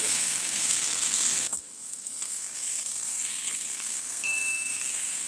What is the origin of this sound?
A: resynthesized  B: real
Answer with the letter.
A